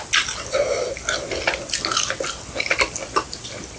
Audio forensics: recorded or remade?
recorded